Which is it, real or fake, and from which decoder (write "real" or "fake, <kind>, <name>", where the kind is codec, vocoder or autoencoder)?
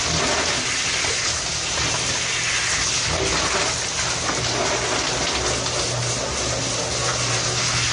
real